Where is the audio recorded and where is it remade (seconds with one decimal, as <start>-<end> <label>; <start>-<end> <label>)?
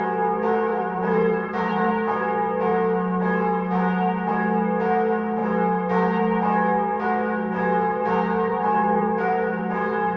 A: 0.0-0.7 recorded; 0.7-1.9 remade; 1.9-8.5 recorded; 8.5-9.6 remade; 9.6-10.2 recorded